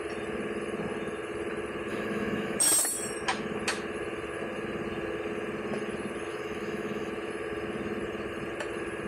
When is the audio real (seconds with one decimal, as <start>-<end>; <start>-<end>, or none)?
0.0-1.9; 2.6-6.3; 7.1-9.1